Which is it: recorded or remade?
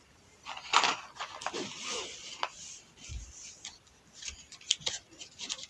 recorded